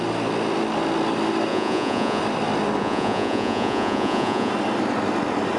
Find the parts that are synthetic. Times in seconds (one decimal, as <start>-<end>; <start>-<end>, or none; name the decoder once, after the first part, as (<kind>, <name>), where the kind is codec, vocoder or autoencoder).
1.5-2.2 (vocoder, Vocos); 2.8-4.5